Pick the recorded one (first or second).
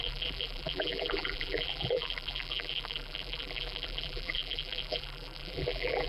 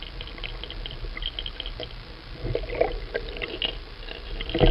second